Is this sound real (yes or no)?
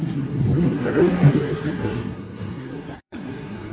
no